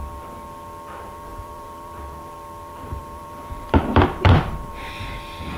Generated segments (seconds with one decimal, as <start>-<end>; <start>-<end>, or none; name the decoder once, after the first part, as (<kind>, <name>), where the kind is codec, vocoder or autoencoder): 1.3-4.7 (vocoder, BigVGAN v2)